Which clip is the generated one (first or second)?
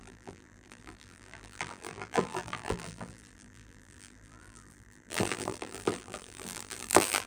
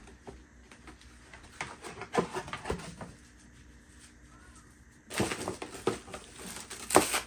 first